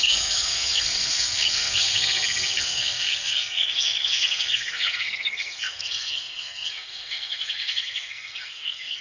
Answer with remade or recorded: remade